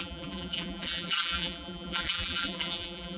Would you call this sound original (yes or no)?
no